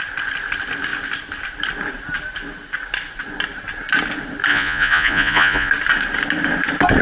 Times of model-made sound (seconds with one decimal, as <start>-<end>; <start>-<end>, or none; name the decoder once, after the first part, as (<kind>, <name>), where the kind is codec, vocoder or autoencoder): 4.5-5.7 (vocoder, Vocos)